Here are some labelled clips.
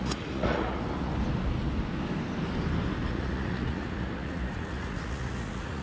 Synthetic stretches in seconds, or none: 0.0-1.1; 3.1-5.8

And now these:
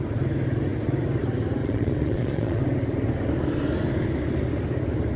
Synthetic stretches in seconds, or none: 1.6-2.6

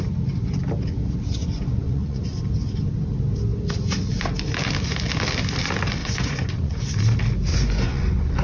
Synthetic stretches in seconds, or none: 1.4-2.2; 6.0-6.8; 7.5-8.4